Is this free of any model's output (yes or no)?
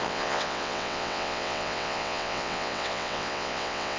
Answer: no